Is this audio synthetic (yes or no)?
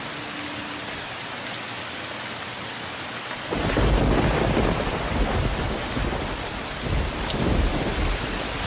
no